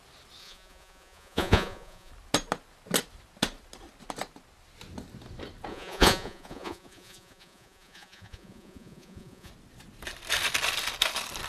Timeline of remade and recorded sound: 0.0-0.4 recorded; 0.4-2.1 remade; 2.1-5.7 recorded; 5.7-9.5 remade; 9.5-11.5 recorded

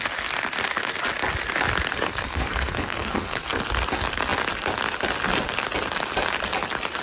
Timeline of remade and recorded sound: 0.0-1.9 recorded; 1.9-3.6 remade; 3.6-7.0 recorded

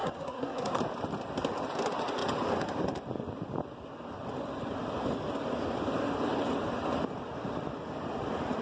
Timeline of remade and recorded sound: 0.0-0.8 remade; 0.8-8.6 recorded

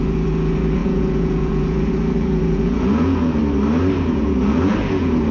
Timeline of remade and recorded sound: 0.0-3.4 remade; 3.4-4.0 recorded; 4.0-5.3 remade

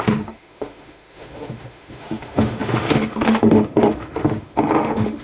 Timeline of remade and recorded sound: 0.0-5.2 remade

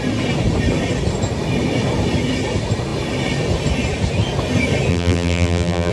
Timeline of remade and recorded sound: 0.0-4.9 recorded; 4.9-5.9 remade

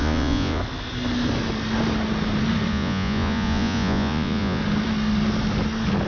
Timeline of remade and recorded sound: 0.0-0.6 remade; 0.6-2.7 recorded; 2.7-4.6 remade; 4.6-6.1 recorded

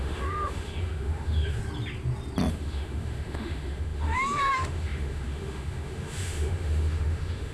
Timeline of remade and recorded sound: 0.0-1.6 remade; 1.6-2.5 recorded; 2.5-7.5 remade